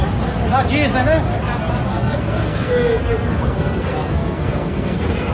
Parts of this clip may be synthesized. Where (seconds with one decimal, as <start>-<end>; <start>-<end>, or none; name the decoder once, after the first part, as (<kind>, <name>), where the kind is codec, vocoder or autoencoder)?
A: 1.9-5.3 (codec, SNAC)